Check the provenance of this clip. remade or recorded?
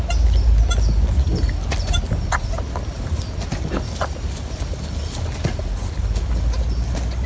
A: recorded